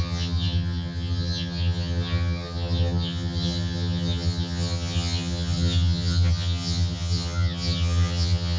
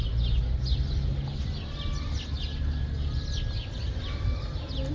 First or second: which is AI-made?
first